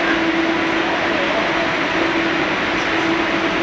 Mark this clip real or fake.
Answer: real